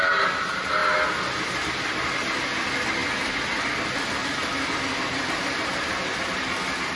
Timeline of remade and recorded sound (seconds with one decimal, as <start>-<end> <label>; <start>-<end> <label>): 0.0-3.0 recorded; 3.0-3.6 remade; 3.6-4.4 recorded; 4.4-5.4 remade; 5.4-7.0 recorded